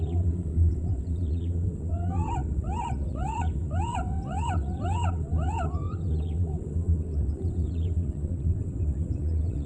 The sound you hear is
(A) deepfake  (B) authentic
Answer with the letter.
A